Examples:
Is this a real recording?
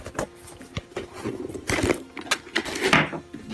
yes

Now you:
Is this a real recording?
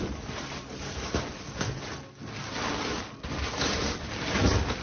yes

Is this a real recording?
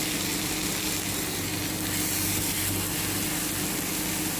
yes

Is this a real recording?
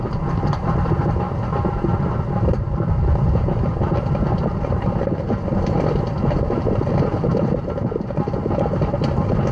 no